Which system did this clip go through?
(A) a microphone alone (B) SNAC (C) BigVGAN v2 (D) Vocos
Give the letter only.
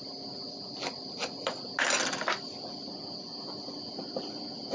A